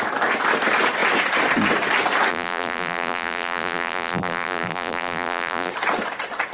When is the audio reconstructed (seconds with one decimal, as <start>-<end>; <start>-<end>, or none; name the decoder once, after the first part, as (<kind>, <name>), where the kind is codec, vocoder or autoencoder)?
2.3-5.7 (vocoder, BigVGAN v2)